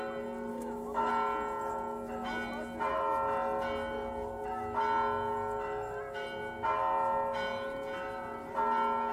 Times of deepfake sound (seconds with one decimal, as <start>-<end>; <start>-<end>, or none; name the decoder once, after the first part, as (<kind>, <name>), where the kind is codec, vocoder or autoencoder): 0.5-1.1 (autoencoder, DAC-VAE)